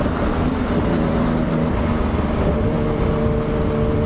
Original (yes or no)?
yes